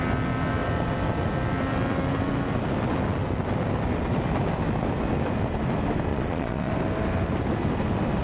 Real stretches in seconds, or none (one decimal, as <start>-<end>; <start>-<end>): 0.0-6.1; 6.7-8.2